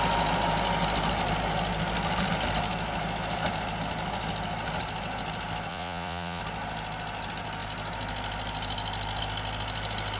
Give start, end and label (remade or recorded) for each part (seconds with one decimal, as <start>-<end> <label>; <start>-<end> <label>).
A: 0.0-5.7 recorded; 5.7-6.4 remade; 6.4-10.2 recorded